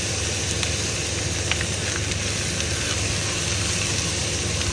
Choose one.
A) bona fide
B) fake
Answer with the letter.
A